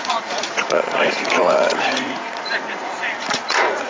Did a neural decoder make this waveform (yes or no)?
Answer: yes